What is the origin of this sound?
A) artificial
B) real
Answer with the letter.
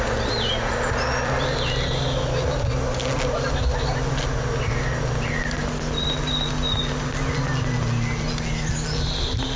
B